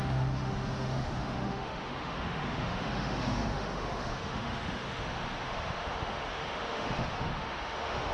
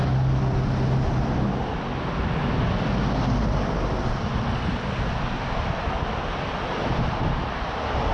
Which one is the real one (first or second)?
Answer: second